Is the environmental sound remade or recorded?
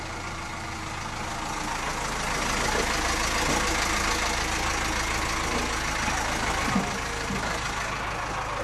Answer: recorded